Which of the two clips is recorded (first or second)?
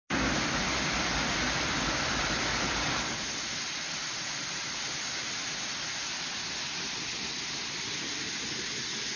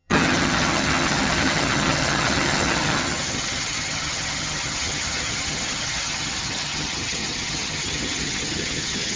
first